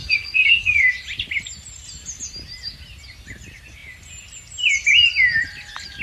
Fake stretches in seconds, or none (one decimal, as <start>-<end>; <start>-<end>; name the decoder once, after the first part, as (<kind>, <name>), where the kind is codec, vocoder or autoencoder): 0.0-0.8 (codec, SNAC)